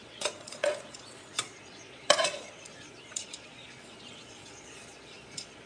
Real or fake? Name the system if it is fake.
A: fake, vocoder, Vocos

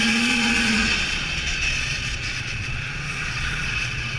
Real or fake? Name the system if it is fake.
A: fake, vocoder, Vocos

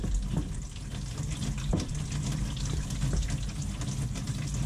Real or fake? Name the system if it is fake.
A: real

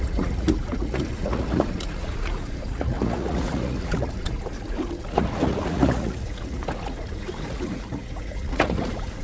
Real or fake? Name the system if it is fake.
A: fake, vocoder, Vocos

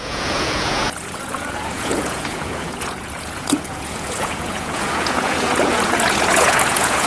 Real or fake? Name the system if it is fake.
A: fake, vocoder, Vocos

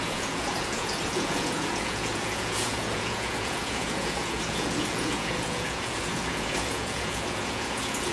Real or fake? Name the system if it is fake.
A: fake, vocoder, Vocos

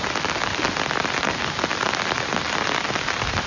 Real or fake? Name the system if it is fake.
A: real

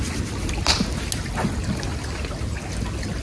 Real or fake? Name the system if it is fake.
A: real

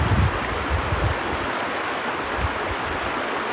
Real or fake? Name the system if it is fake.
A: real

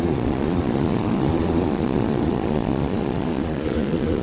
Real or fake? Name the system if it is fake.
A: fake, vocoder, Vocos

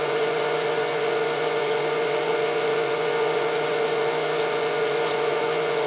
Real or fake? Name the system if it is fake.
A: fake, vocoder, Vocos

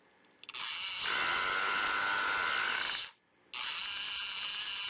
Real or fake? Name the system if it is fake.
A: real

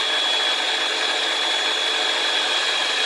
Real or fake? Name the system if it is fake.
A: real